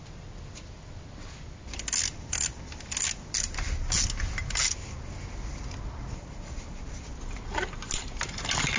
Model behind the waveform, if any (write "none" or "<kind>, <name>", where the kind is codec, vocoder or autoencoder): none